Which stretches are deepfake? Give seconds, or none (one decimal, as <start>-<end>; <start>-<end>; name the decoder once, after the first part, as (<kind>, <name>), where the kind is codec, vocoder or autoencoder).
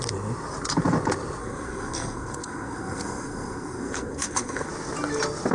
1.4-4.7 (codec, SNAC)